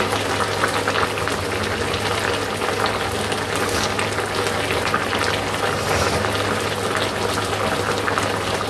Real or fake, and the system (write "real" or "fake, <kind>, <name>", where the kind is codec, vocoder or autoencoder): real